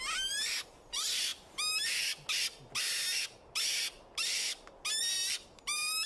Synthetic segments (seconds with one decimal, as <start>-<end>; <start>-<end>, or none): 0.0-1.3; 5.0-6.1